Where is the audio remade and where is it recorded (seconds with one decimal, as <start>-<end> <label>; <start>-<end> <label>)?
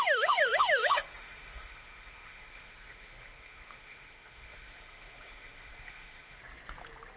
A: 0.0-6.4 remade; 6.4-7.2 recorded